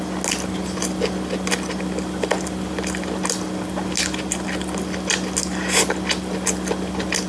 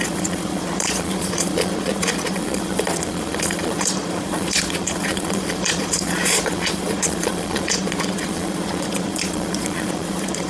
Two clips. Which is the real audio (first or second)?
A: first